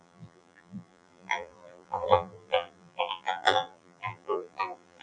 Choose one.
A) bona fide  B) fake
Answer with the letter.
B